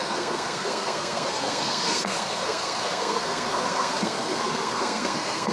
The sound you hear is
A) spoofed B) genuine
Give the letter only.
A